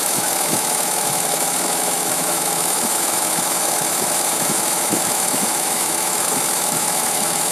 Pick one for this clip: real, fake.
fake